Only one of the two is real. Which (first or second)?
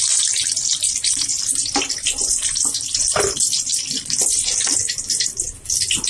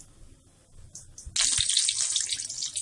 second